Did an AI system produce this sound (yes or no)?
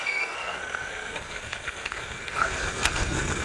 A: yes